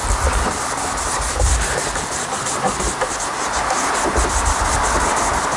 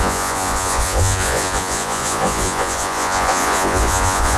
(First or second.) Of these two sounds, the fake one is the second